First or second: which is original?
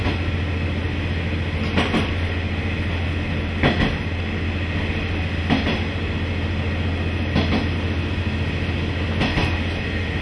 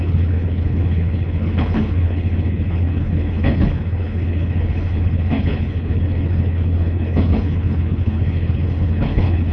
first